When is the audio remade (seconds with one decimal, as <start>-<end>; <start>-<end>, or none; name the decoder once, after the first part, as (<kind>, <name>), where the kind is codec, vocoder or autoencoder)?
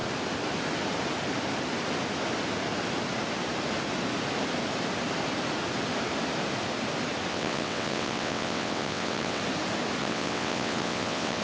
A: 7.3-9.4 (vocoder, WaveNeXt); 10.0-11.4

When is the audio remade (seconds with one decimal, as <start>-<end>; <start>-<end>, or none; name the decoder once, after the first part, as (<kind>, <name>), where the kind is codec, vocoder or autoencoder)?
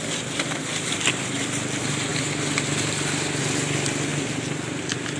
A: none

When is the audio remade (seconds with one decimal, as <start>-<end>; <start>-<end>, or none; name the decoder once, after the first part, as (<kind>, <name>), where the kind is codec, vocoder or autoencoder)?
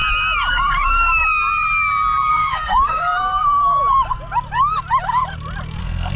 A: 0.5-1.2 (codec, SNAC); 2.3-3.8; 5.8-6.2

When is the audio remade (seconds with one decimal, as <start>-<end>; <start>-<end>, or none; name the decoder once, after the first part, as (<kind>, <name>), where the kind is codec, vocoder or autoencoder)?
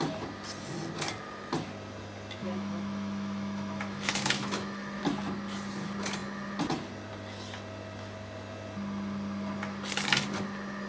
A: 2.4-5.0 (autoencoder, DAC-VAE)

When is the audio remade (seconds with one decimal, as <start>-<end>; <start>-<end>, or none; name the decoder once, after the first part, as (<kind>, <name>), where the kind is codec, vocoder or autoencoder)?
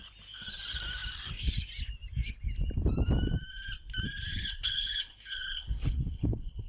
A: 4.2-6.7 (codec, HILCodec)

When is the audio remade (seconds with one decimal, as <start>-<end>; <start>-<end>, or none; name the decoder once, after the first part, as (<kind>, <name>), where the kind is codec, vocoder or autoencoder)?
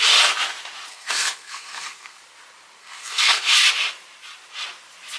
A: 0.9-2.2 (codec, SNAC); 2.8-3.5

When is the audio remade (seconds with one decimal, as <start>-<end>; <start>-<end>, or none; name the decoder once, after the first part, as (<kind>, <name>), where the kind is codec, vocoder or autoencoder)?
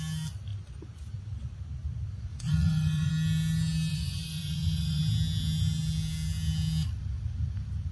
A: 2.3-3.1 (vocoder, Vocos); 3.9-5.0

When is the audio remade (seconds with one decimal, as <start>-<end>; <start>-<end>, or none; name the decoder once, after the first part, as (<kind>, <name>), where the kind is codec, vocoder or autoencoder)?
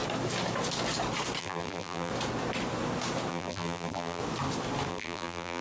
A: 1.4-2.1 (vocoder, BigVGAN v2); 3.3-4.2; 4.9-5.6